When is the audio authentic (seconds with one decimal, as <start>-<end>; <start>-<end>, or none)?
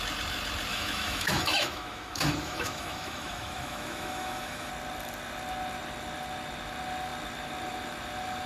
0.0-0.7; 4.7-8.5